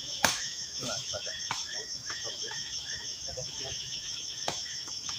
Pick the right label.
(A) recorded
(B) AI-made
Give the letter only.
B